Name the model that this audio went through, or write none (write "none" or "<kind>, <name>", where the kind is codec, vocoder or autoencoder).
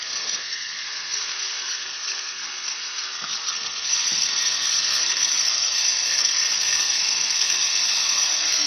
codec, SNAC